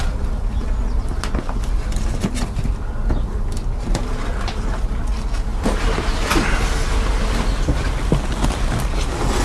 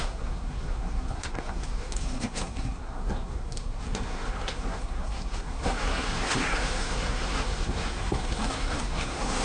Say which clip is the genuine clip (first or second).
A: first